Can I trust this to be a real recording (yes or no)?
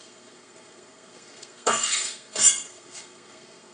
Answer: no